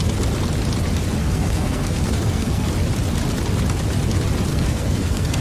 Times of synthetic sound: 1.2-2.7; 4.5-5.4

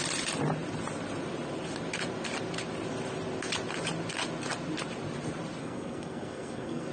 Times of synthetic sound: 5.6-6.9

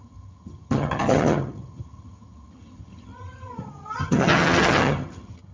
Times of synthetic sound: 0.0-5.5

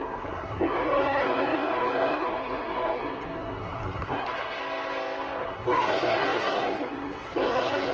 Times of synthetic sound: 0.0-4.6; 5.4-7.9

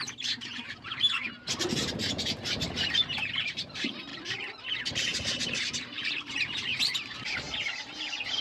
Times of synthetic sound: 0.0-4.1; 4.8-6.7